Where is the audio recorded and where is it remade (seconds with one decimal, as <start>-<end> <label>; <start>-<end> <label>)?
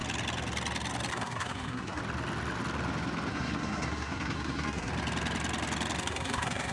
0.0-1.1 recorded; 1.1-2.0 remade; 2.0-3.3 recorded; 3.3-4.9 remade; 4.9-6.0 recorded; 6.0-6.7 remade